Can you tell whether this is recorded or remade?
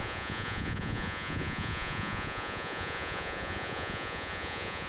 remade